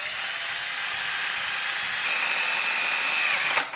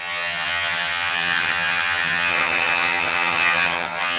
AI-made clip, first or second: second